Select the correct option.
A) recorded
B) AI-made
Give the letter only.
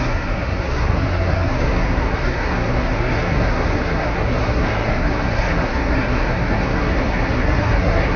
B